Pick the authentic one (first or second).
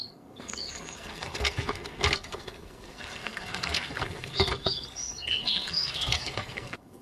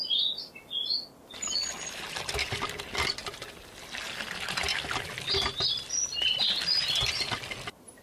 second